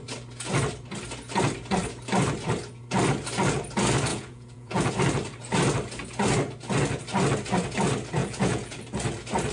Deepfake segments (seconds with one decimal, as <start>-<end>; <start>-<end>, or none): 4.1-4.9; 8.2-8.8